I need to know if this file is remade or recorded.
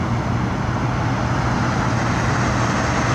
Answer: recorded